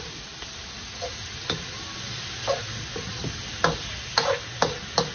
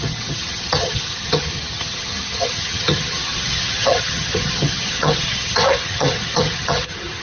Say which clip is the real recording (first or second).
first